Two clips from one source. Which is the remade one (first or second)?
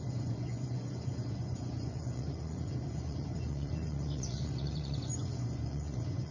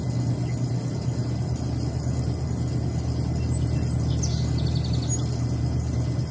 first